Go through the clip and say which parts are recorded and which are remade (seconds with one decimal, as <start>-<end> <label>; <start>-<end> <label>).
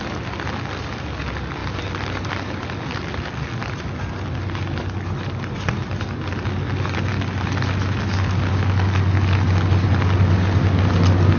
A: 0.0-11.4 recorded